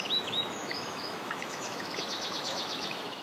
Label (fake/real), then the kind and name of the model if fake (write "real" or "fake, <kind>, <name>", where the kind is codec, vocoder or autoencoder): fake, autoencoder, DAC-VAE